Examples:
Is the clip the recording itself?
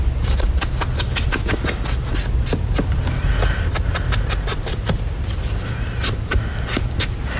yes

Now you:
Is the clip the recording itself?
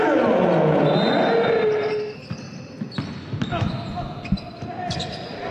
yes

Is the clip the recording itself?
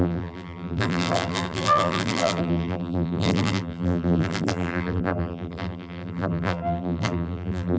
no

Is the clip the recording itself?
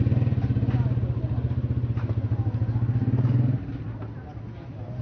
yes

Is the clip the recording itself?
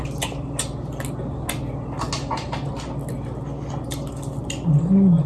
yes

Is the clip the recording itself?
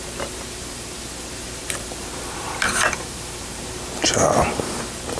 no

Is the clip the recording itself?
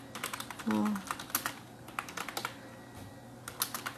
yes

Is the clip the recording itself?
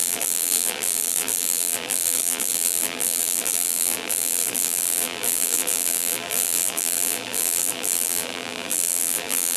no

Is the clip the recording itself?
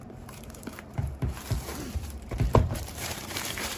no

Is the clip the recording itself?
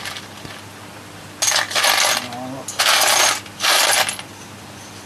yes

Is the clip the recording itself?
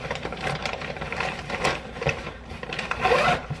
no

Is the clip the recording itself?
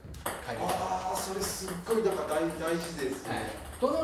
no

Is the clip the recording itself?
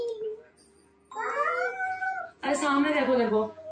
no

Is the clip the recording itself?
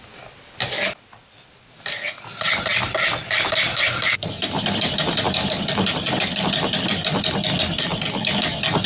yes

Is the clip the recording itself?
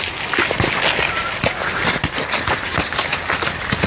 yes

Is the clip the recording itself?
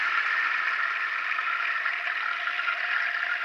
yes